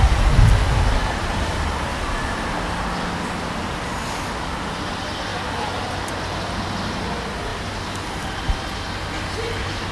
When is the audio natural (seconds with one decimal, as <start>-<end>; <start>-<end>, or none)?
0.0-9.9